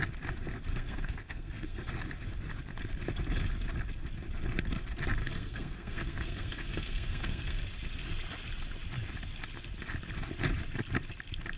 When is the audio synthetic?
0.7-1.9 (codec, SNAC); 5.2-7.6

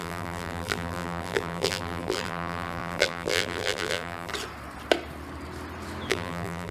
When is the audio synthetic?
0.0-4.3 (vocoder, BigVGAN v2); 6.1-6.7